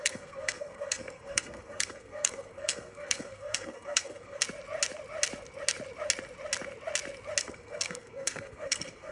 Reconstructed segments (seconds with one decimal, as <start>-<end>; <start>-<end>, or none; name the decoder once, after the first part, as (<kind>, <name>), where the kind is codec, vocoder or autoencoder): 0.0-4.4 (codec, SNAC); 7.4-9.1